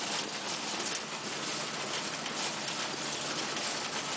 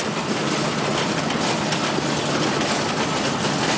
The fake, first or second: second